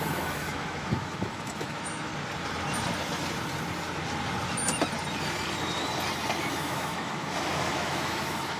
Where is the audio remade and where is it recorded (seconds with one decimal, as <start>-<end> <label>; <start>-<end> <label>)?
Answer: 0.0-2.1 remade; 2.1-6.5 recorded; 6.5-8.6 remade